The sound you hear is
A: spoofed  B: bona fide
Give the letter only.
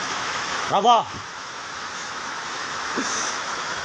A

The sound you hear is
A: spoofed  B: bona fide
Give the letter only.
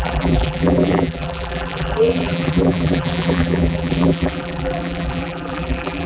A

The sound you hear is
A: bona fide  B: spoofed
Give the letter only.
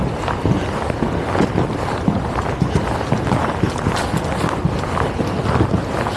A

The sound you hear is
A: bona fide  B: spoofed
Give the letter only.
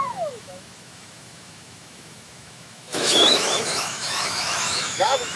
B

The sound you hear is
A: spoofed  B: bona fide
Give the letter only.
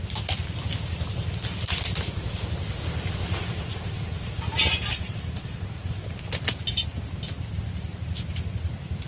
B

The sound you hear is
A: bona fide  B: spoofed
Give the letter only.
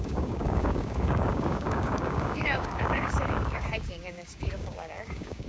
B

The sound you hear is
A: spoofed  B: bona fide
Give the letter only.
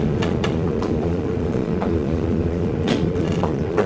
A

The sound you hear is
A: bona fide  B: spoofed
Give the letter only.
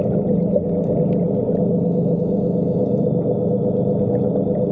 A